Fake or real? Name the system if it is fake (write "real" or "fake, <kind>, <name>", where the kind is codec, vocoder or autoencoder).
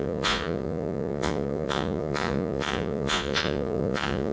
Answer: fake, vocoder, Vocos